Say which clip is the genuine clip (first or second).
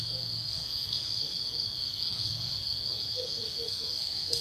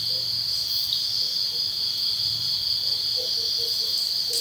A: second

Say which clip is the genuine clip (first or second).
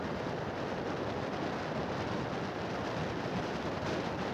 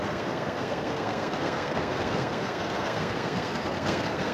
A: first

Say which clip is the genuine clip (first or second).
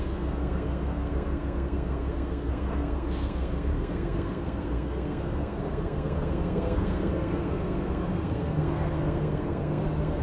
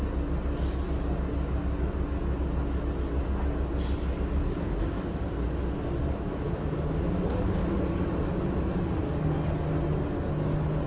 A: second